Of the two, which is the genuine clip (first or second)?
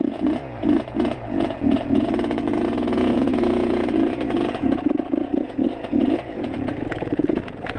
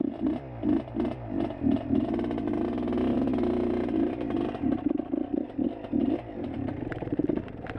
second